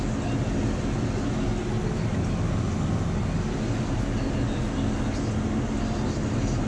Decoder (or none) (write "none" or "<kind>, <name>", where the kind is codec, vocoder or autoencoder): none